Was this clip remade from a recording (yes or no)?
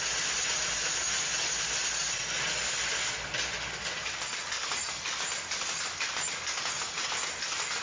no